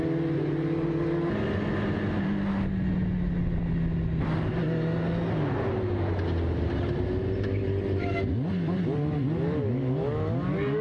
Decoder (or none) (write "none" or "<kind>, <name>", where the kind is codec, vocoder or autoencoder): none